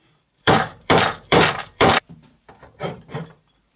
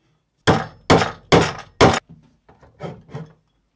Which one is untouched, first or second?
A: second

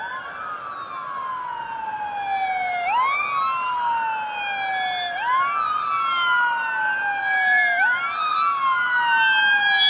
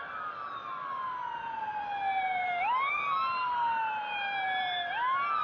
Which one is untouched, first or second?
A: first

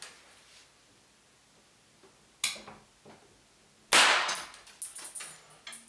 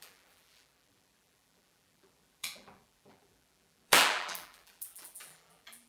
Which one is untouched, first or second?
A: first